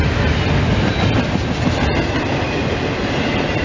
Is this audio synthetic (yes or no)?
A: no